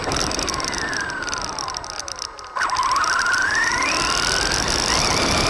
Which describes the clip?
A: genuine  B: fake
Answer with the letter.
A